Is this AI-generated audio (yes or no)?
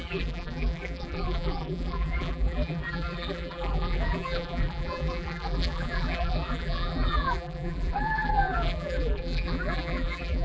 yes